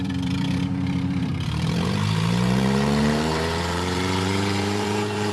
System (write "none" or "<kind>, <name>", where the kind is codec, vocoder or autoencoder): vocoder, BigVGAN v2